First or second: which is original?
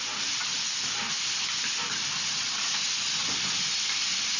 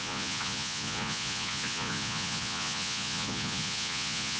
first